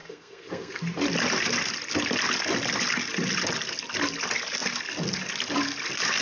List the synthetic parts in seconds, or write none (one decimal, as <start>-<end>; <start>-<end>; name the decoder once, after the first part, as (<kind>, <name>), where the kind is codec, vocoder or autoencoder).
0.0-0.8 (codec, SNAC)